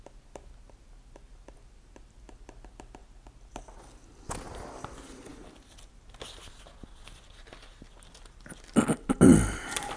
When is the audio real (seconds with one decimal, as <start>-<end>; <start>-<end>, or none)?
0.0-10.0